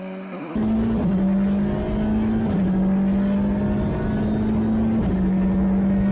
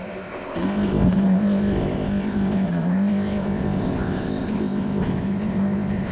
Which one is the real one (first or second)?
first